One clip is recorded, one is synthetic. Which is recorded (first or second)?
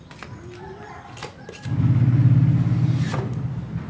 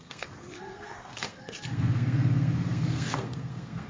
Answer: first